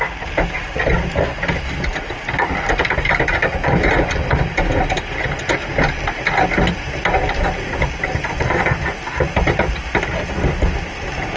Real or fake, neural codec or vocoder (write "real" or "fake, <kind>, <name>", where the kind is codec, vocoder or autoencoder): real